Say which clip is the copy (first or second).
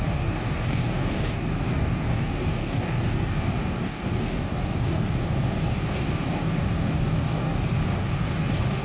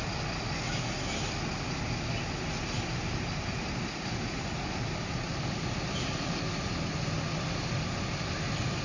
first